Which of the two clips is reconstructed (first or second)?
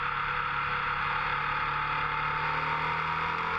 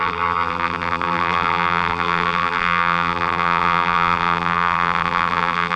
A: second